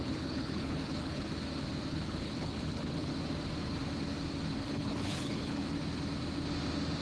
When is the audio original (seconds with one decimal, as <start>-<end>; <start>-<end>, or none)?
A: 1.3-1.9; 3.1-4.6; 5.6-7.0